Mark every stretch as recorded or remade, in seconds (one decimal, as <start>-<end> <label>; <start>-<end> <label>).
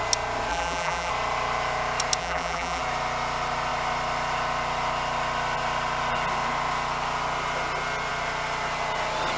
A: 0.0-0.5 recorded; 0.5-1.1 remade; 1.1-2.2 recorded; 2.2-2.8 remade; 2.8-9.4 recorded